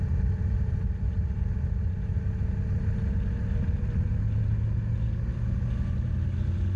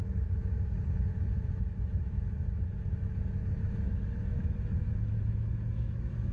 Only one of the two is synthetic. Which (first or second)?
second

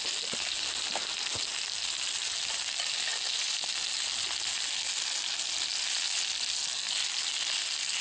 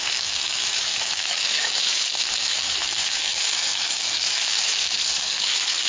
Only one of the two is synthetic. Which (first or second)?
second